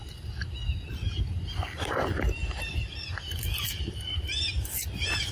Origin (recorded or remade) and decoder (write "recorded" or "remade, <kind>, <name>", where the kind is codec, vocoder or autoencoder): recorded